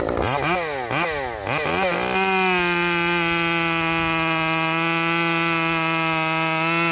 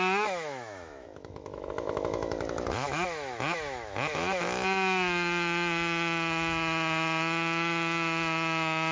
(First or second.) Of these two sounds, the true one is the first